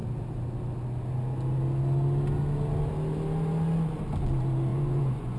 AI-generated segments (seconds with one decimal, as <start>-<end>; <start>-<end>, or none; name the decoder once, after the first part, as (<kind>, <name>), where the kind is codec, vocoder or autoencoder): 4.7-5.4 (vocoder, Vocos)